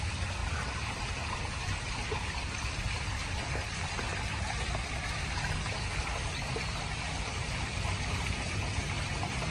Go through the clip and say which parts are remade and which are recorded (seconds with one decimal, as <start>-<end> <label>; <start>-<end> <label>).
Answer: 0.0-0.4 recorded; 0.4-3.3 remade; 3.3-9.5 recorded